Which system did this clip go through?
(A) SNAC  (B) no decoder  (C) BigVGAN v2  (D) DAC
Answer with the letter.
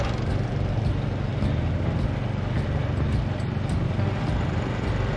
B